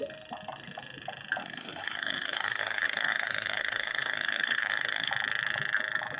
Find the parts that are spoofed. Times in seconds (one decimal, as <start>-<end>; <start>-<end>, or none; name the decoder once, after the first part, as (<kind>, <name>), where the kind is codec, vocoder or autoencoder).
1.4-5.1 (codec, SNAC)